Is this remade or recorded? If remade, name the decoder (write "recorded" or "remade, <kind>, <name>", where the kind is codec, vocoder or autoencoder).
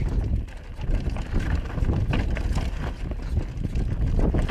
recorded